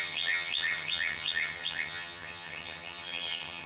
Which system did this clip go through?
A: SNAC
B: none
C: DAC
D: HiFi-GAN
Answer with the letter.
D